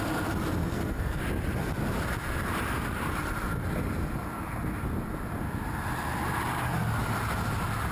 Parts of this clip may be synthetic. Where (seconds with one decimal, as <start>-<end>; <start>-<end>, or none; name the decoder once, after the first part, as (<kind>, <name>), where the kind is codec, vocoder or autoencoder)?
0.6-1.2 (codec, SNAC)